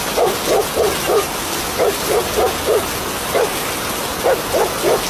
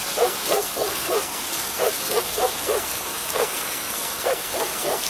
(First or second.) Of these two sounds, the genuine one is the first